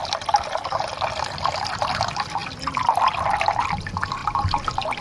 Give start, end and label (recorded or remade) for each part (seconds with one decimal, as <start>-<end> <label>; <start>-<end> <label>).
0.0-5.0 recorded